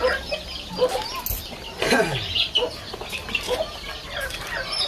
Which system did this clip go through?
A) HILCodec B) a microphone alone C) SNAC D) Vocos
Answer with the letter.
B